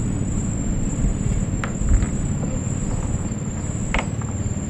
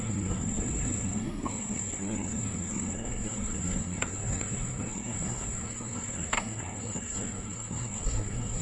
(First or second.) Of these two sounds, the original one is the first